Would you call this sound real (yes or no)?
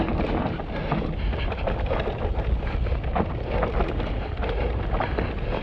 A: yes